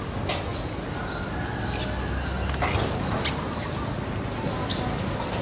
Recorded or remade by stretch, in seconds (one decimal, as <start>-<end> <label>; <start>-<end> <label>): 0.0-5.4 recorded